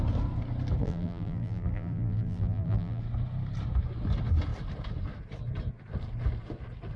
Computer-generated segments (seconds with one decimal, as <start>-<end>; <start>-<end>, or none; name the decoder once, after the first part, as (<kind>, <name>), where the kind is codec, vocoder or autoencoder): 0.8-3.0 (vocoder, BigVGAN v2)